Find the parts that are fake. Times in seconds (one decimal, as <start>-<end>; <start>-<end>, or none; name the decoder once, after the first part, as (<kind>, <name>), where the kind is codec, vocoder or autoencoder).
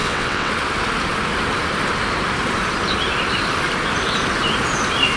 0.0-0.5 (vocoder, WaveNeXt)